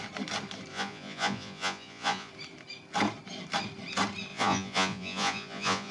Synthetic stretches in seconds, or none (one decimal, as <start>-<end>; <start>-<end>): 0.7-2.3; 4.3-5.9